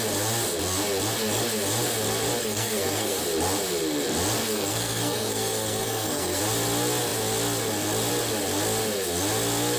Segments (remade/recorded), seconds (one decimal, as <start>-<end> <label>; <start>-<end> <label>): 0.0-2.4 recorded; 2.4-3.2 remade; 3.2-4.4 recorded; 4.4-6.4 remade; 6.4-9.8 recorded